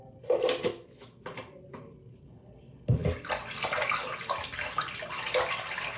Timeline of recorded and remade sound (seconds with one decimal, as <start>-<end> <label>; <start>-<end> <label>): 0.0-0.7 recorded; 0.7-1.2 remade; 1.2-6.0 recorded